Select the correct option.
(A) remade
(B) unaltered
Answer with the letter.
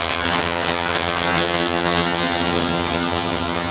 A